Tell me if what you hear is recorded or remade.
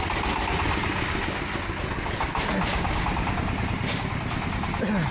recorded